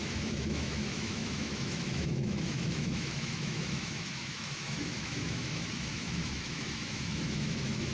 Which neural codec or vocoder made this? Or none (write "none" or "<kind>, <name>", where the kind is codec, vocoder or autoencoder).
autoencoder, DAC-VAE